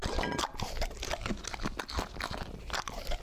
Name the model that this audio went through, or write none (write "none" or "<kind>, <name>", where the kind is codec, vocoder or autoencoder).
none